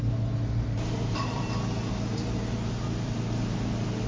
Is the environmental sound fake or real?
real